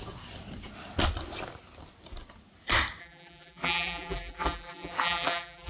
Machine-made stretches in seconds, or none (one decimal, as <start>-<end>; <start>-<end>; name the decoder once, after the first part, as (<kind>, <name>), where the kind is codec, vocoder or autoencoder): 3.0-5.7 (vocoder, BigVGAN v2)

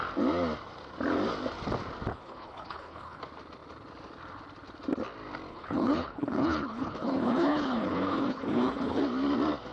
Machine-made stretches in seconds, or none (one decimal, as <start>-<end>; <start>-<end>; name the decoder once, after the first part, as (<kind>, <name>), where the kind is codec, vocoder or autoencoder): 2.1-3.2 (codec, HILCodec); 5.5-9.0

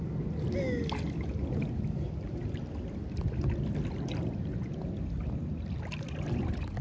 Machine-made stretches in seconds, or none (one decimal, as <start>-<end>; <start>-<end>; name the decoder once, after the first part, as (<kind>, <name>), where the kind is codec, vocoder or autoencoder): none

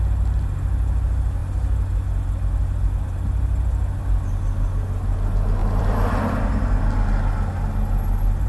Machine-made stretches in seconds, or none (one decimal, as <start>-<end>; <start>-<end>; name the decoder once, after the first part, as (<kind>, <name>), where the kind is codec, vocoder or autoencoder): 5.6-6.4 (vocoder, BigVGAN v2)

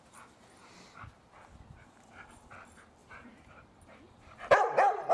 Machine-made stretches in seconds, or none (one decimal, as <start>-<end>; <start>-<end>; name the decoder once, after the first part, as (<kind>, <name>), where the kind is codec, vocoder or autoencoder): 3.0-5.1 (vocoder, BigVGAN v2)

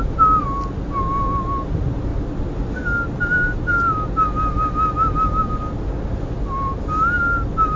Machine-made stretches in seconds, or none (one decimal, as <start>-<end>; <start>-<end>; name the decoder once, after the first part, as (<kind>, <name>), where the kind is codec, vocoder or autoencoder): none